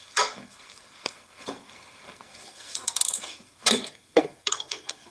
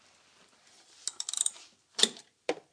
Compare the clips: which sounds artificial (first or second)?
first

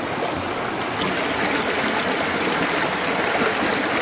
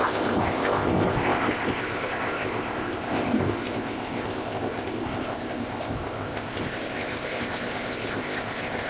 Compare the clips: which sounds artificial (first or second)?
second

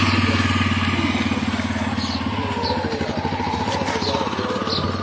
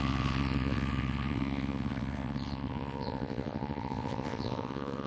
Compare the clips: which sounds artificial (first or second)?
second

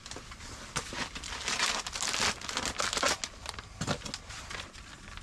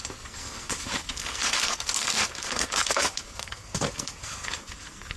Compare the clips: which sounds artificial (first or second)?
second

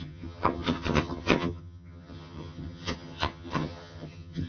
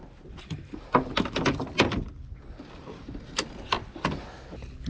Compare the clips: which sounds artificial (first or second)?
first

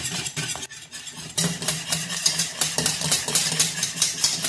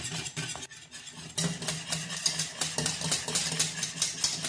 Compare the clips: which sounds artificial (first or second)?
first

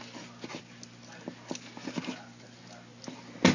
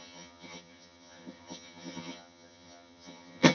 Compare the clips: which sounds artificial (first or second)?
second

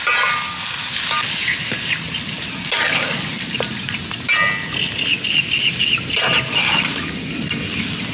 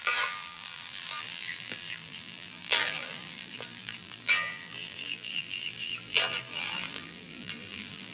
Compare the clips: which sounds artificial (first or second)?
second